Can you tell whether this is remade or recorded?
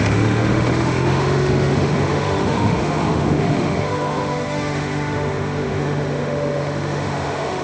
remade